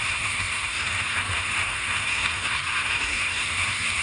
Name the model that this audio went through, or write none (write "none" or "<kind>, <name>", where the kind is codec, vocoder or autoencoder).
codec, SNAC